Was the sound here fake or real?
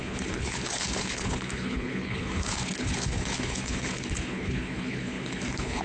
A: fake